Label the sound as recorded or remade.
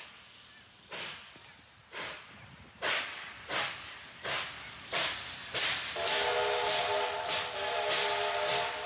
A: recorded